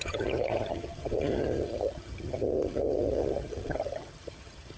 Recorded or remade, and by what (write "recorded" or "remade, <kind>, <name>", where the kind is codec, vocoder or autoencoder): remade, vocoder, HiFi-GAN